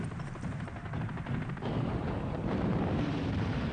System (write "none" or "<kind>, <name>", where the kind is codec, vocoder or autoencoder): vocoder, BigVGAN v2